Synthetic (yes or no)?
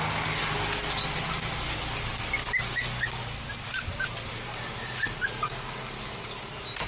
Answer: no